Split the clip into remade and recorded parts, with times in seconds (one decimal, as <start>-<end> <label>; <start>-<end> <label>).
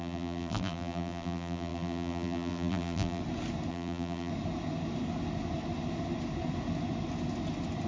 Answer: 0.0-3.2 remade; 3.2-3.7 recorded; 3.7-4.3 remade; 4.3-7.9 recorded